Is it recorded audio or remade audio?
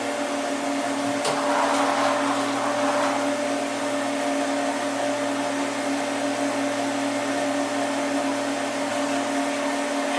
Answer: recorded